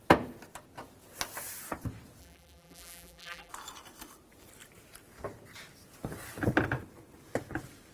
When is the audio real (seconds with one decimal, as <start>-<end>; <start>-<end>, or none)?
0.0-2.2; 3.5-7.9